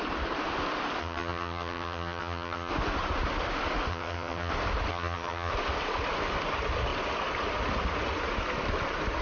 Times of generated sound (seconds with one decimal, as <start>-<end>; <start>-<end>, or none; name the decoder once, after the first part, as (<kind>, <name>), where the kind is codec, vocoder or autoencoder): 1.0-2.7 (vocoder, HiFi-GAN); 3.9-4.5; 4.9-5.5